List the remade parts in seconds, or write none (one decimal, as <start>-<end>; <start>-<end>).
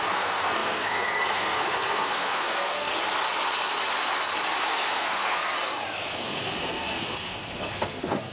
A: 0.0-2.9; 4.6-5.4; 6.1-8.3